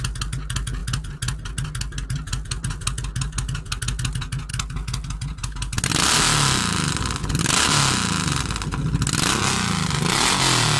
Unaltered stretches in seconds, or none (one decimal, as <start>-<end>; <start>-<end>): 0.0-10.8